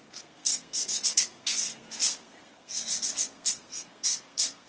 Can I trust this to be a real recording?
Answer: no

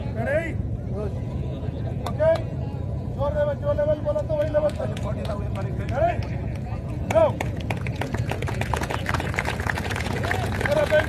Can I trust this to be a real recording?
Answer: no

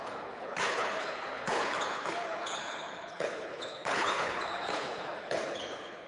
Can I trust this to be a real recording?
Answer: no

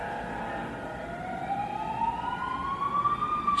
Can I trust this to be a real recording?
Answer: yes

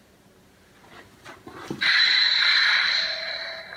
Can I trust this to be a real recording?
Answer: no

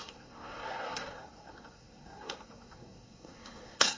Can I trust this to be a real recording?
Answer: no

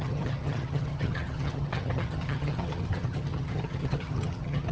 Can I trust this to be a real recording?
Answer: no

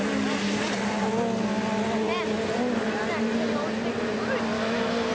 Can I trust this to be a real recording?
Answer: yes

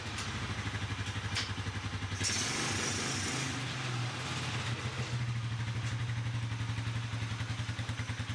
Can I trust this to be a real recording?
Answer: yes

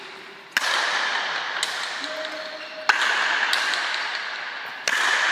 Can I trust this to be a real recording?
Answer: yes